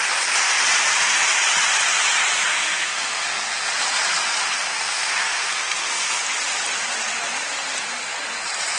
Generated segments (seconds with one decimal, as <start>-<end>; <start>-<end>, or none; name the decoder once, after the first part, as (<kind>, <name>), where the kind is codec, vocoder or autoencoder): 2.5-3.7 (codec, SNAC); 4.6-6.2